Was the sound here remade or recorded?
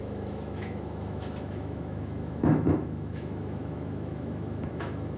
remade